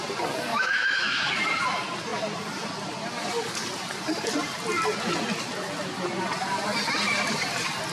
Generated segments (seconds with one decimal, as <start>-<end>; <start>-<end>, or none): 0.5-1.3